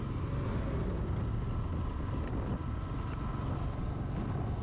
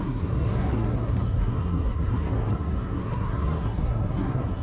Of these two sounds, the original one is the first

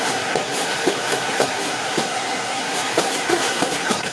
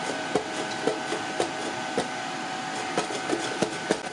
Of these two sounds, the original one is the second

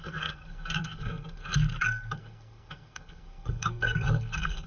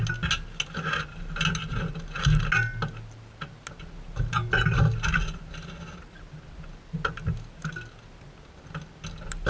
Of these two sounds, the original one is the second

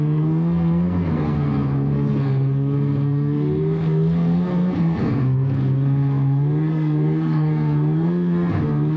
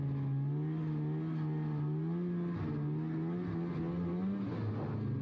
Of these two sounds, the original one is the second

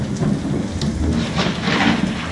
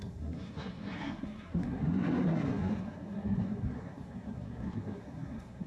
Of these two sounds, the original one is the first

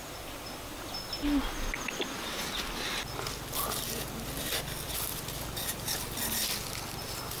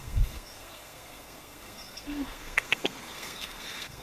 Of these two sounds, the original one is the first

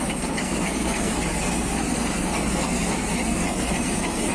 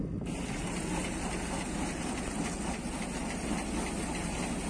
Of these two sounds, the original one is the second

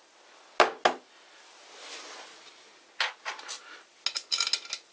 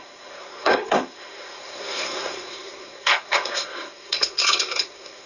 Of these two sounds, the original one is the first